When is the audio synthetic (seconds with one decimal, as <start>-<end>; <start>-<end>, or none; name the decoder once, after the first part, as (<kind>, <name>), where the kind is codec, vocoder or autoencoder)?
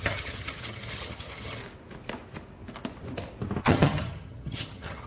0.0-1.6 (vocoder, HiFi-GAN); 3.6-5.1